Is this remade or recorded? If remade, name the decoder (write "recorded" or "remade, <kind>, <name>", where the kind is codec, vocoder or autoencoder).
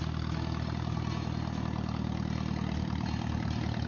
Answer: recorded